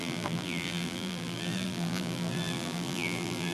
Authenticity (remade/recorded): remade